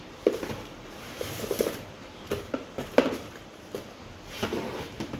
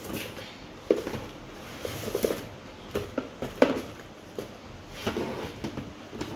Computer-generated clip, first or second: first